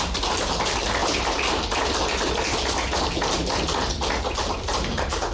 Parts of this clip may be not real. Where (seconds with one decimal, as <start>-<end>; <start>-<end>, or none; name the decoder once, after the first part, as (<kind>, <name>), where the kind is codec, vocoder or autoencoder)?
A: 0.0-1.0 (vocoder, BigVGAN v2); 4.2-5.3